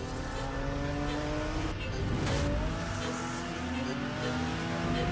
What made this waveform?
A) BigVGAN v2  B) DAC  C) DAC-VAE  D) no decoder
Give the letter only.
D